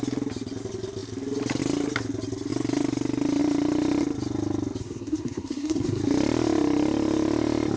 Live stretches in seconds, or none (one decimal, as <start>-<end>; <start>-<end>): 0.0-4.8; 6.0-7.8